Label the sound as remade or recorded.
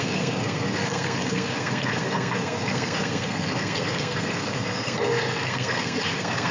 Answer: remade